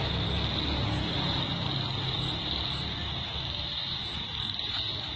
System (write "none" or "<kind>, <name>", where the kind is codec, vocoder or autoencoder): none